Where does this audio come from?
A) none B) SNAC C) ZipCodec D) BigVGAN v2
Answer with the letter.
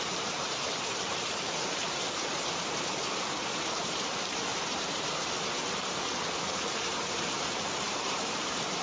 D